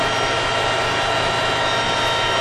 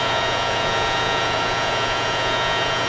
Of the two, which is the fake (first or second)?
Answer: second